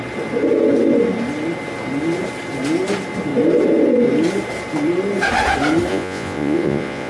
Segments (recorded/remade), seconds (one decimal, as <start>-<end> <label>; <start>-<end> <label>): 0.0-5.9 recorded; 5.9-7.1 remade